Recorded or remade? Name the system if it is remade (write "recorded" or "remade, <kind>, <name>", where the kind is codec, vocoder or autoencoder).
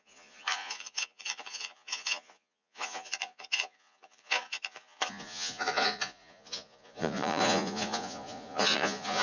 remade, vocoder, Vocos